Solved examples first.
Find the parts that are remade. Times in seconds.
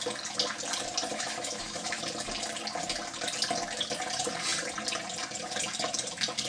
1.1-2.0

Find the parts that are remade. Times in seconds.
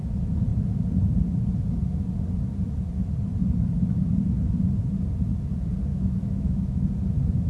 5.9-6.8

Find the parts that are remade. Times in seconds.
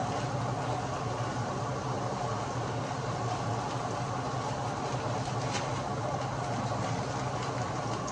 none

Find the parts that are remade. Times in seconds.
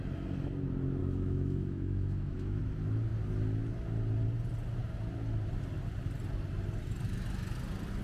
1.0-2.6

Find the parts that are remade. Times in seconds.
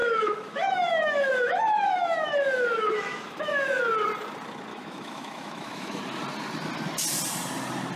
0.0-3.8; 4.7-6.0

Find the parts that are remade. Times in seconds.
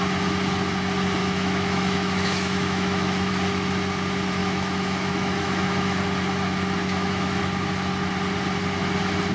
1.2-3.3; 4.4-6.0; 6.8-7.4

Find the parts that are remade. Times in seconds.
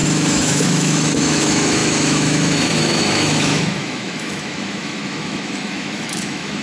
0.0-6.6